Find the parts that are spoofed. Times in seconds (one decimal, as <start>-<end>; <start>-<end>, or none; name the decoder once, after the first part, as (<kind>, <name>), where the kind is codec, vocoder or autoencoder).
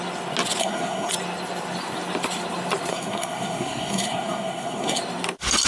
0.6-1.1 (codec, SNAC); 2.9-5.0